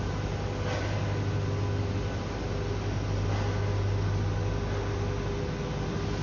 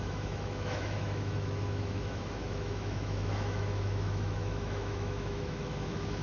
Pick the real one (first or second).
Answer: first